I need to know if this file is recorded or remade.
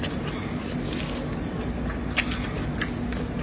recorded